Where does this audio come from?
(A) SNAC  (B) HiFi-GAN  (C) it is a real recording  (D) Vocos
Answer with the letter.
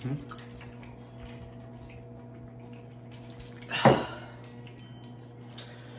C